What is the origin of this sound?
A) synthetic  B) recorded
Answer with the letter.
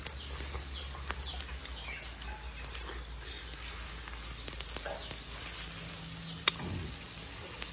B